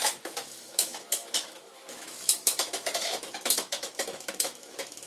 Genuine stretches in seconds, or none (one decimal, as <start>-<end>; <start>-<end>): none